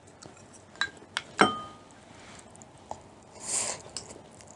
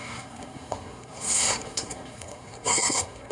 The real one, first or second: first